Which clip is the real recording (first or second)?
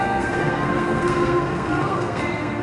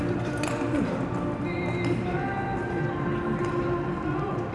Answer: second